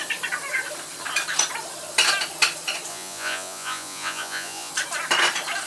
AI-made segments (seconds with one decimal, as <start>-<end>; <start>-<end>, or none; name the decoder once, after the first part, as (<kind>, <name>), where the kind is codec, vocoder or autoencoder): 2.9-4.7 (vocoder, Vocos)